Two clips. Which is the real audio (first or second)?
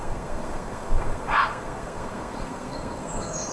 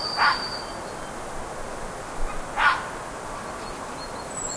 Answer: second